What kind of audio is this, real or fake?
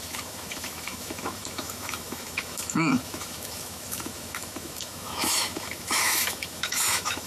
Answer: fake